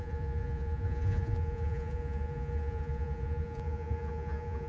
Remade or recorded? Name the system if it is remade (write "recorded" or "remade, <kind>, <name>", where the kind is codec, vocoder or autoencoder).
remade, vocoder, Vocos